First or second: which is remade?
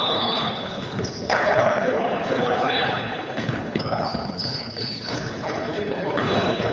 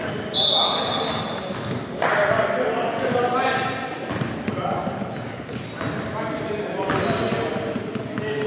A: first